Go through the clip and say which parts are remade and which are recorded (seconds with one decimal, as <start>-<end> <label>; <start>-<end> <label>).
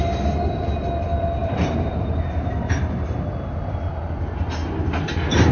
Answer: 0.0-1.4 recorded; 1.4-3.2 remade; 3.2-5.5 recorded